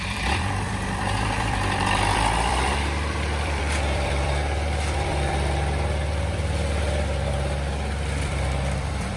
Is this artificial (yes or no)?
yes